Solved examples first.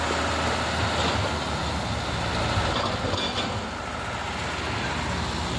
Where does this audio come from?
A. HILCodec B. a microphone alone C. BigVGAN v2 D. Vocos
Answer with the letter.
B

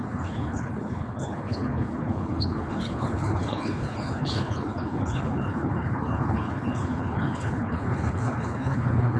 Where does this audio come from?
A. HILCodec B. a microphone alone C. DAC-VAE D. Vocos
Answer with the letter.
A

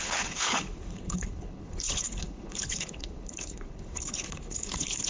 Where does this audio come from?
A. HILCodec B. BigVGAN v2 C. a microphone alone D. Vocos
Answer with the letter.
A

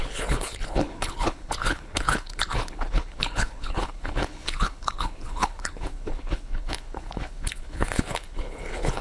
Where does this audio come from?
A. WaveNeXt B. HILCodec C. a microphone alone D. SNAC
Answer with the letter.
B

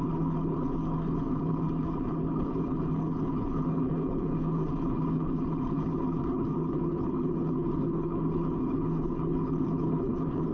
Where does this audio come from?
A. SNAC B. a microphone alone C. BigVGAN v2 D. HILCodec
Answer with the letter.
D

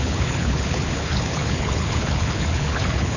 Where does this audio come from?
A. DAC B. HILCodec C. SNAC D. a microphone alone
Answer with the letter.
B